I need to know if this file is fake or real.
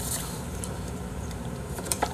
fake